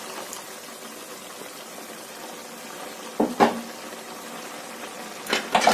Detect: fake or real real